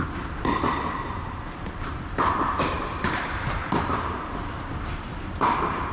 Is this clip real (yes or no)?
no